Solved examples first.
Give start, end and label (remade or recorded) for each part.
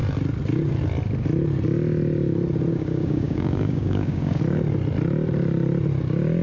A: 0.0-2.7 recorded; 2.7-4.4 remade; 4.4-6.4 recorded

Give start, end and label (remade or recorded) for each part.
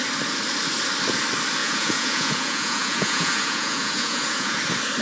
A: 0.0-1.6 recorded; 1.6-4.6 remade; 4.6-5.0 recorded